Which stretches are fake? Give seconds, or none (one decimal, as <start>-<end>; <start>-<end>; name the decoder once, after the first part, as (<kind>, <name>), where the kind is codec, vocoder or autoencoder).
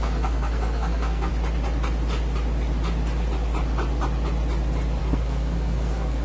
0.0-1.3 (codec, SNAC); 5.0-6.2